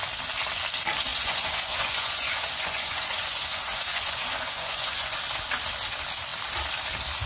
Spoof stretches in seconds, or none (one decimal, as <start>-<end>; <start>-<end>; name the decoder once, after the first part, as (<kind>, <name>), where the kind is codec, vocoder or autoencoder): 1.1-5.2 (vocoder, Vocos)